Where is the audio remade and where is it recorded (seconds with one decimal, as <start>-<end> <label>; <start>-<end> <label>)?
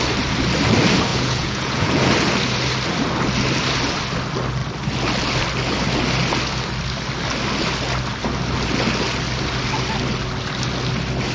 0.0-1.1 recorded; 1.1-2.1 remade; 2.1-11.3 recorded